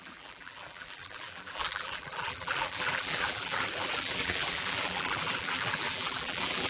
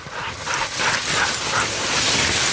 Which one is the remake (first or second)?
first